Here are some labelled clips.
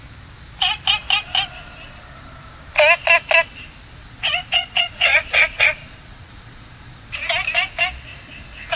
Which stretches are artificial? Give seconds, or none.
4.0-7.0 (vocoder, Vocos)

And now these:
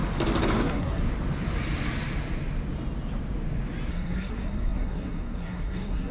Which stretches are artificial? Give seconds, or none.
0.6-1.0 (codec, SNAC); 3.9-6.1

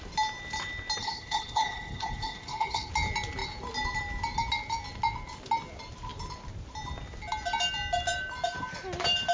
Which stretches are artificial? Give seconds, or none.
1.0-2.9 (codec, HILCodec)

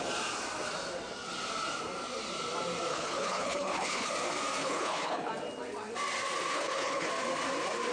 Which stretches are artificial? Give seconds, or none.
2.9-4.1 (codec, HILCodec); 4.6-5.3; 6.5-7.1

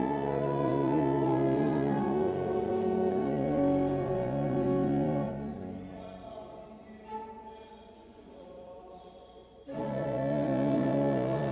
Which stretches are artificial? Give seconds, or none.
0.0-6.8 (vocoder, Vocos); 7.7-11.5

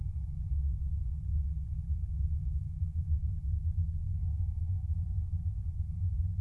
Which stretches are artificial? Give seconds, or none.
2.4-3.3 (codec, SNAC); 4.3-5.0

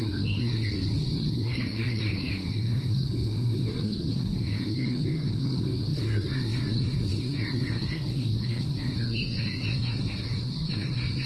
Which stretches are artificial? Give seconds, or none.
0.0-11.3 (codec, SNAC)